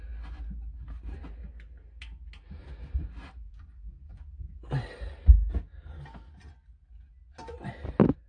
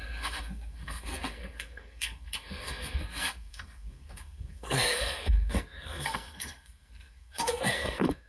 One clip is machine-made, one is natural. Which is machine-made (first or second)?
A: second